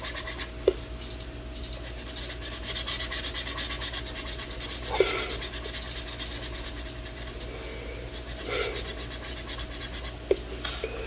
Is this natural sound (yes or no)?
yes